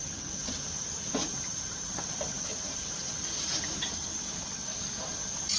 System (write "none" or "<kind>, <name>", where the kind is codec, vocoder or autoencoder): vocoder, BigVGAN v2